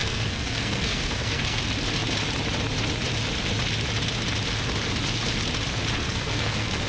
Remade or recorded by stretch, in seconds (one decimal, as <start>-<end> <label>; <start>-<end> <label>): 0.0-1.6 remade; 1.6-6.0 recorded; 6.0-6.9 remade

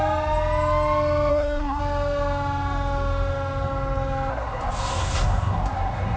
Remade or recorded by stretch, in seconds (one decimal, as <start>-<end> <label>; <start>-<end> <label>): 0.0-1.3 recorded; 1.3-1.8 remade; 1.8-4.3 recorded; 4.3-6.2 remade

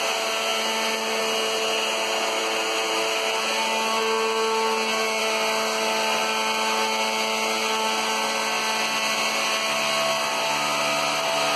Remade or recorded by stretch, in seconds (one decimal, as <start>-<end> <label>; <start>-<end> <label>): 0.0-11.6 recorded

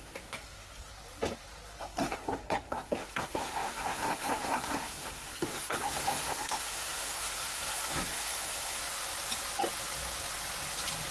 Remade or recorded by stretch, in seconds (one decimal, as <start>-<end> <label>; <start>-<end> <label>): 0.0-0.9 remade; 0.9-1.8 recorded; 1.8-8.8 remade; 8.8-11.1 recorded

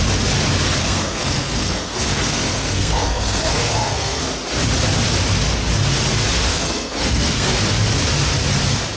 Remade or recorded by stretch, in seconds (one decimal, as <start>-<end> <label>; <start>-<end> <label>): 0.0-0.8 recorded; 0.8-4.2 remade; 4.2-6.5 recorded; 6.5-7.6 remade; 7.6-9.0 recorded

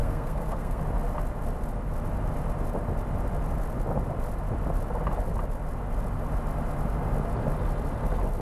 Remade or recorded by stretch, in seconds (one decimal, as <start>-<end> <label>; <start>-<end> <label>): 0.0-0.8 remade; 0.8-8.4 recorded

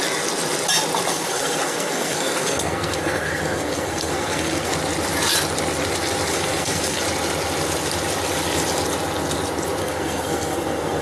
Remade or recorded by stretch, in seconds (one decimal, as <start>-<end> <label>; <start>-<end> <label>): 0.0-1.1 recorded; 1.1-4.7 remade; 4.7-6.3 recorded; 6.3-7.0 remade; 7.0-9.8 recorded; 9.8-11.0 remade

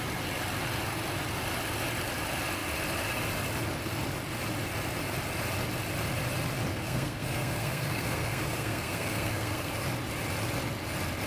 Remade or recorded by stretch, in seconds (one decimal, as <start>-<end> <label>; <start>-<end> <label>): 0.0-6.7 recorded; 6.7-9.7 remade; 9.7-11.3 recorded